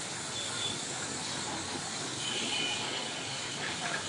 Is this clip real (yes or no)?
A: no